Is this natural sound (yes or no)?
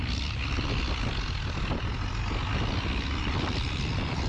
yes